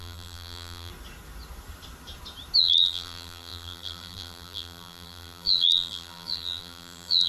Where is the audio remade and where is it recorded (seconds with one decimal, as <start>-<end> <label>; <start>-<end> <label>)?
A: 0.0-0.9 remade; 0.9-2.6 recorded; 2.6-7.3 remade